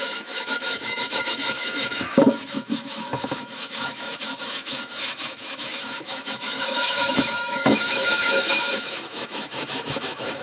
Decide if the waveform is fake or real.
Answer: fake